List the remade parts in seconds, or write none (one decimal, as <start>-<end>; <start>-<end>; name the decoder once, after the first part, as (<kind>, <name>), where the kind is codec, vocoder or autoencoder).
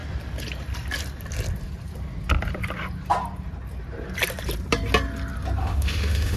5.6-6.4 (autoencoder, DAC-VAE)